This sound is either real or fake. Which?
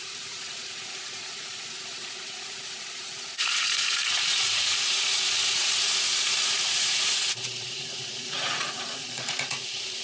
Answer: fake